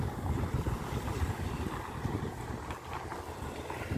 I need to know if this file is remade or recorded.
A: recorded